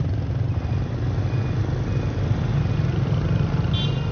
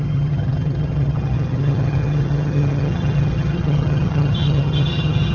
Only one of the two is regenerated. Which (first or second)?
second